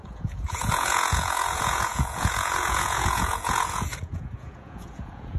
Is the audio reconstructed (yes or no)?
yes